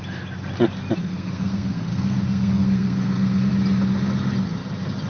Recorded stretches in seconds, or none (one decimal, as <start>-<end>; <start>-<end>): 0.0-1.0; 3.5-5.1